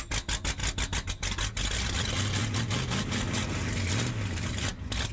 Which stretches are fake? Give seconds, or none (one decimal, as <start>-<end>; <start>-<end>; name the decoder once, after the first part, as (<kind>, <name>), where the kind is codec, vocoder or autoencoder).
none